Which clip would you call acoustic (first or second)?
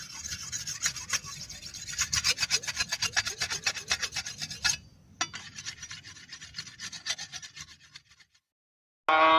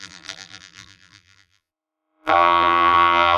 first